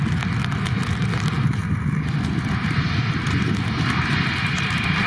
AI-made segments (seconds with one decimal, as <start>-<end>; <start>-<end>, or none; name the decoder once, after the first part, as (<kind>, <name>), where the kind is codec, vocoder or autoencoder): 1.6-5.1 (vocoder, BigVGAN v2)